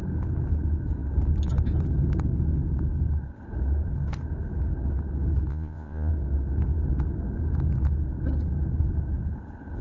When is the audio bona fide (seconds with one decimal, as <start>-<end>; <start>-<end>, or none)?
0.0-5.5; 6.1-9.8